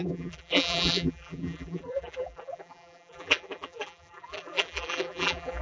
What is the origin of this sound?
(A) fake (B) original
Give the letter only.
A